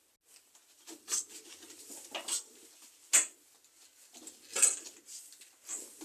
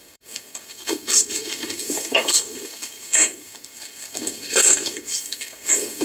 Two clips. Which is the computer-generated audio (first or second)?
second